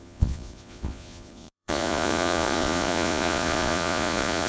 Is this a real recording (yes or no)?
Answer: no